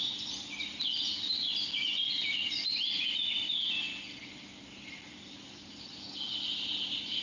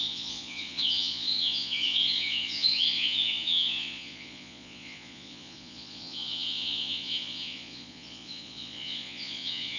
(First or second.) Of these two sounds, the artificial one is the second